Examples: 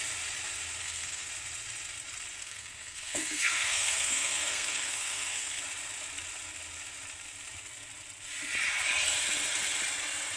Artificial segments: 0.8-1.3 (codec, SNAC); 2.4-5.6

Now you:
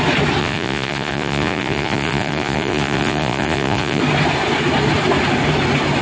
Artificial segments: 0.4-4.0 (vocoder, Vocos)

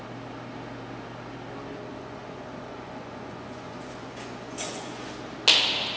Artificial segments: 1.9-5.2 (vocoder, Vocos)

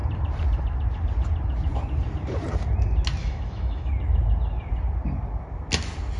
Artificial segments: 3.2-3.9 (autoencoder, DAC-VAE)

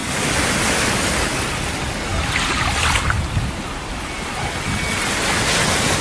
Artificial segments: none